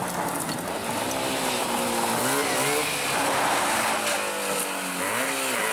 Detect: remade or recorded recorded